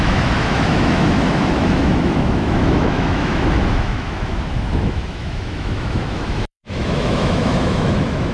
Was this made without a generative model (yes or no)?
no